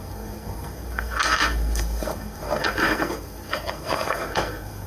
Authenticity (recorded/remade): remade